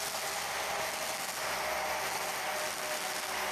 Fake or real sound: real